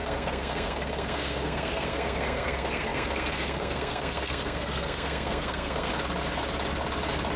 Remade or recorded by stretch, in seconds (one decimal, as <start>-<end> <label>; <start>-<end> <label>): 0.0-5.9 remade; 5.9-7.4 recorded